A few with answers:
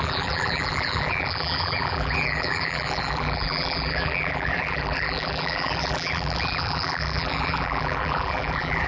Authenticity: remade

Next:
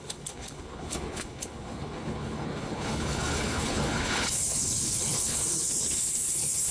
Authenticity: remade